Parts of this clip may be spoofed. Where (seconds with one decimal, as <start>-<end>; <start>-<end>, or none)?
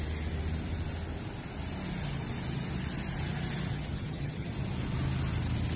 3.7-4.5